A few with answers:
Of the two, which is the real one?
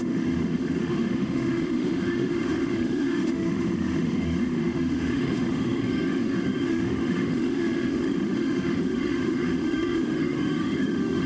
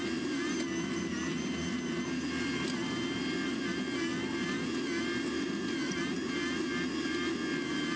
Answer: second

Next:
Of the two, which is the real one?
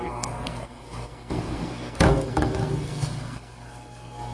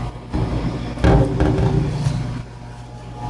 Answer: second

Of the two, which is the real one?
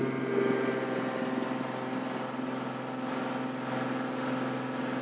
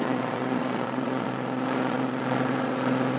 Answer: first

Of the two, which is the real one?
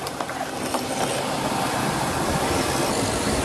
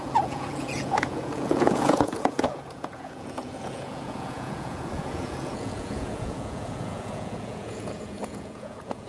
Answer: first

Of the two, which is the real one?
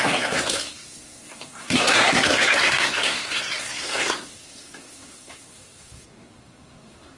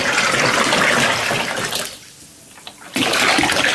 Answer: second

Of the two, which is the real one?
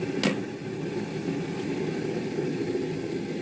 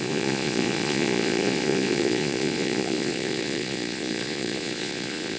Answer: first